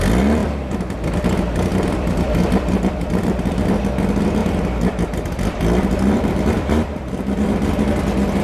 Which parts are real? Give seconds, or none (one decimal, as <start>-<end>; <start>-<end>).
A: 0.0-0.4; 1.1-1.7; 3.8-4.4; 7.8-8.4